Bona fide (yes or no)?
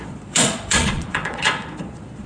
no